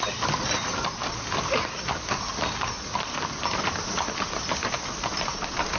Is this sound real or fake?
real